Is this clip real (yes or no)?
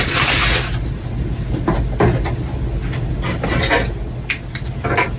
yes